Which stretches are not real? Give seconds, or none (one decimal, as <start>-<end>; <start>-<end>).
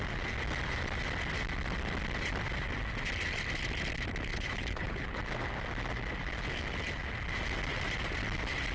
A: 4.3-5.2